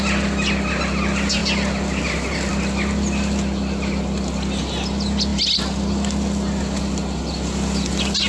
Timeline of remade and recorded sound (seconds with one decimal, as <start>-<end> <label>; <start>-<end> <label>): 0.0-8.3 recorded